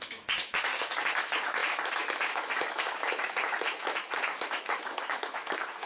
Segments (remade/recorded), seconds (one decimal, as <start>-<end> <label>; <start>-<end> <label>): 0.0-5.9 remade